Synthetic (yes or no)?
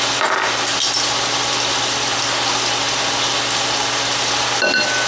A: no